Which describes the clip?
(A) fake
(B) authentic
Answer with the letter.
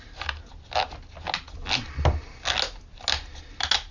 B